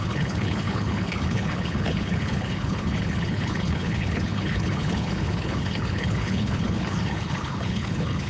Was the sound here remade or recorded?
remade